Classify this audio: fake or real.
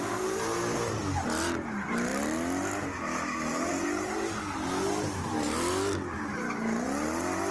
real